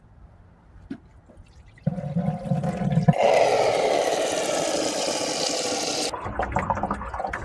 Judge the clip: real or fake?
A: real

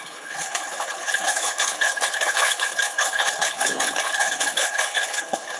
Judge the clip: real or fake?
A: fake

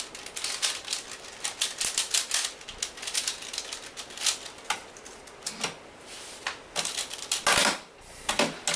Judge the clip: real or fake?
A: real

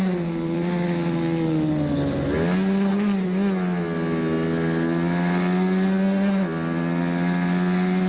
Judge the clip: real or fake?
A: real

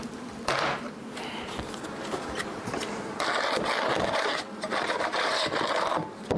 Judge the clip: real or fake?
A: real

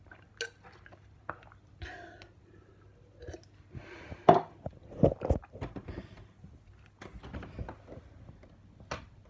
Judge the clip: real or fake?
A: real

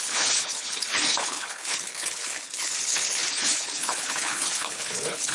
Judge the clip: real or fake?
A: fake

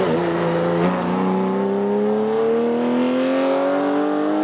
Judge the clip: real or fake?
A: real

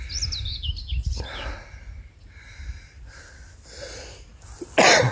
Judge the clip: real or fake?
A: real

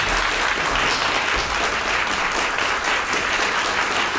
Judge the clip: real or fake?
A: real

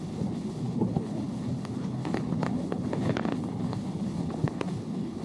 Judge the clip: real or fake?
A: fake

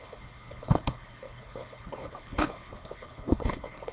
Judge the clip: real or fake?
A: fake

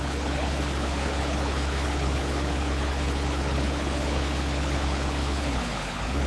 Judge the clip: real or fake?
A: fake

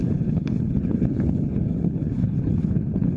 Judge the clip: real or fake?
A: fake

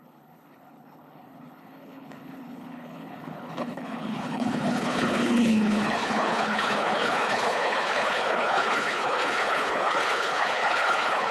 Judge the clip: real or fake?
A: fake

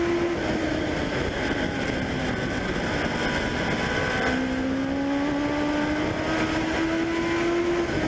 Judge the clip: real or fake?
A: real